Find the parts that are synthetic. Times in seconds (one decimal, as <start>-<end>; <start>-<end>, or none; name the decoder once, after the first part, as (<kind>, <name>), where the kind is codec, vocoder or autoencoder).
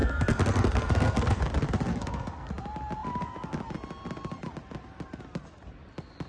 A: 0.0-1.4 (codec, SNAC); 1.9-2.5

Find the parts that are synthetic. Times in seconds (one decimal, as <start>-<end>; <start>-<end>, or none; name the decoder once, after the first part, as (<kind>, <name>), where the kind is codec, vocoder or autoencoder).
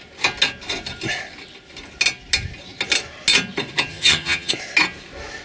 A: 3.9-4.5 (vocoder, HiFi-GAN)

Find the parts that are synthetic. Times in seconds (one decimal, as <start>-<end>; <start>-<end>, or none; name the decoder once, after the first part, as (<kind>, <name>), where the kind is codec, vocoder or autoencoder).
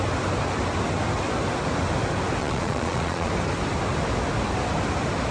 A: 2.4-3.3 (vocoder, Vocos)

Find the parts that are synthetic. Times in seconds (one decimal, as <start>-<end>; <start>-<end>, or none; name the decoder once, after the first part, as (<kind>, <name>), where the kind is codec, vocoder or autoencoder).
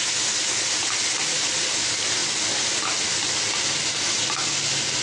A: none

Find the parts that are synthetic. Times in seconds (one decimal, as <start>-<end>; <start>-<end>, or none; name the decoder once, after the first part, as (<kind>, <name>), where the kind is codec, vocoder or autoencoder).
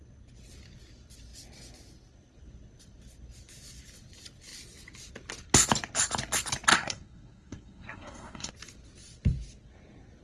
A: 6.7-8.5 (codec, SNAC)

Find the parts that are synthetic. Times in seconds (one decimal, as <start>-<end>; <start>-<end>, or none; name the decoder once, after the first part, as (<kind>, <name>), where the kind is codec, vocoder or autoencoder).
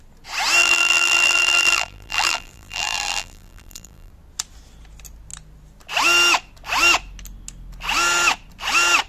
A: 0.6-4.1 (vocoder, BigVGAN v2)